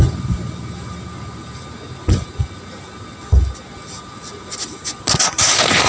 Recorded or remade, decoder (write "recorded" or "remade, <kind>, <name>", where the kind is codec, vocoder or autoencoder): recorded